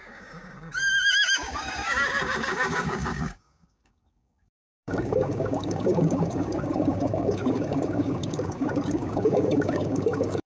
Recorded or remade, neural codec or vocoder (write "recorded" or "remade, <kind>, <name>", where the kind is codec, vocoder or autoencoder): remade, codec, DAC